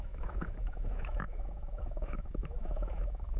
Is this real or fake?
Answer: fake